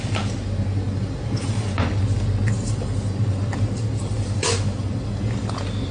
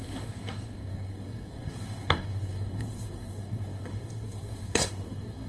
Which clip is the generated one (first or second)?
second